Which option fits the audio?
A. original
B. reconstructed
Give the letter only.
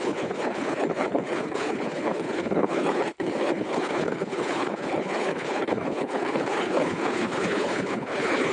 B